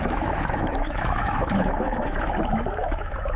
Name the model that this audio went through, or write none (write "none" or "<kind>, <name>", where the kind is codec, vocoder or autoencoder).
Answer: autoencoder, DAC-VAE